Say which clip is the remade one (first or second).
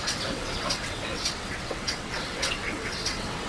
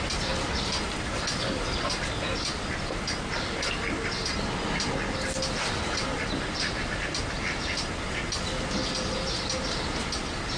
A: first